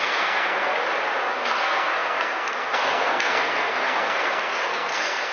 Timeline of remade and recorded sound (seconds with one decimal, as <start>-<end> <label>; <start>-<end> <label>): 0.0-0.7 remade; 0.7-1.3 recorded; 1.3-5.3 remade